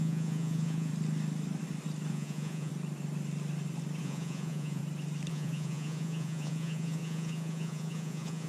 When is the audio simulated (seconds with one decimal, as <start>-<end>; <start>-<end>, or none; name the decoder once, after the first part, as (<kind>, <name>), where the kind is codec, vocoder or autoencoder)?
0.0-0.9 (vocoder, Vocos); 2.1-2.7; 4.0-4.8; 5.3-8.5